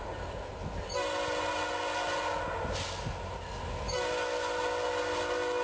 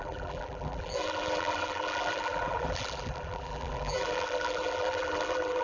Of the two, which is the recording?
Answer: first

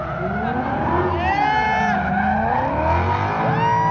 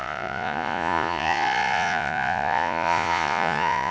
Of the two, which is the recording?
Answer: first